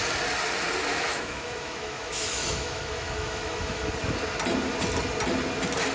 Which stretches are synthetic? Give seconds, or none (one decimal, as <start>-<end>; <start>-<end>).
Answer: 0.9-3.9